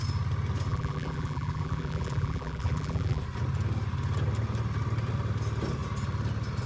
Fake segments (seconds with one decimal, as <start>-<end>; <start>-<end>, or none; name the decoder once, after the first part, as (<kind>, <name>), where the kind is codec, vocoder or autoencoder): 0.7-3.2 (vocoder, BigVGAN v2)